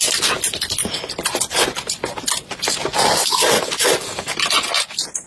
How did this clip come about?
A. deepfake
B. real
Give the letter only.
B